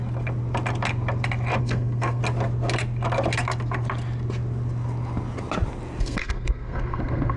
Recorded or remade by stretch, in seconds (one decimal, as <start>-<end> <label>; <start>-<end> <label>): 0.0-1.6 recorded; 1.6-2.2 remade; 2.2-6.0 recorded; 6.0-7.4 remade